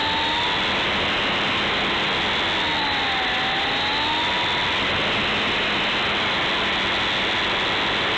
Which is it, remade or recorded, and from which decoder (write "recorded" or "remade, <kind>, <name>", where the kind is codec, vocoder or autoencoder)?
recorded